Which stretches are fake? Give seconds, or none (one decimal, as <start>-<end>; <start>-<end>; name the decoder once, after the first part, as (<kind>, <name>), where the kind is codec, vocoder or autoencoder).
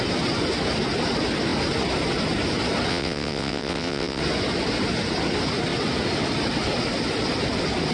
2.9-4.2 (vocoder, WaveNeXt)